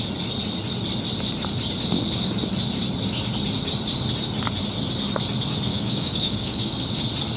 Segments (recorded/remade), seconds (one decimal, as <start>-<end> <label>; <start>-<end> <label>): 0.0-5.7 recorded; 5.7-6.8 remade; 6.8-7.4 recorded